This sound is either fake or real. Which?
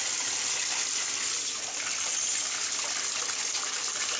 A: real